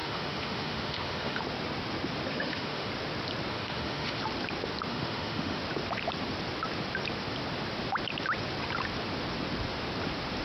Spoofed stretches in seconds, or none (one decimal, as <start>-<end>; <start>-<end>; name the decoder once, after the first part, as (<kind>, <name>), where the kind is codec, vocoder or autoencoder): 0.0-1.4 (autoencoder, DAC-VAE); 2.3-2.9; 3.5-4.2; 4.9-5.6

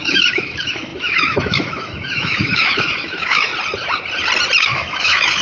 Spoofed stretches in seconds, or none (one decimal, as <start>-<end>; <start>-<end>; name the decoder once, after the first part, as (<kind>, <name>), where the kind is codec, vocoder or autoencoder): 0.0-3.5 (autoencoder, DAC-VAE); 4.6-5.4

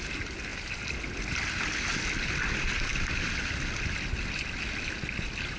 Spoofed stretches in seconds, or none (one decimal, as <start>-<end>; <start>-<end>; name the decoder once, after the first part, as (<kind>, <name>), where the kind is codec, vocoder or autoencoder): none

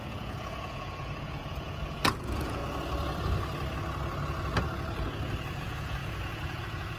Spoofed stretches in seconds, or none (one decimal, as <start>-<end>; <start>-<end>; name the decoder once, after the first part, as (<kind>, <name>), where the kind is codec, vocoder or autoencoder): 0.0-2.6 (vocoder, Vocos); 5.6-7.0

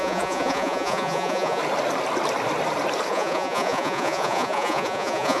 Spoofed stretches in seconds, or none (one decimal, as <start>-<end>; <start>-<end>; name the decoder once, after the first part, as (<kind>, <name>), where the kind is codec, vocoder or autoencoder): 0.0-1.6 (vocoder, Vocos); 3.1-5.4

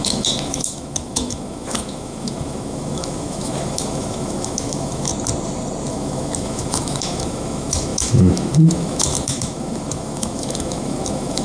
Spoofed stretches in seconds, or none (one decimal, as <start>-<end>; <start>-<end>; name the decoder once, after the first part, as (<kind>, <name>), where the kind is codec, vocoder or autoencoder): 0.0-5.1 (autoencoder, DAC-VAE); 5.9-11.4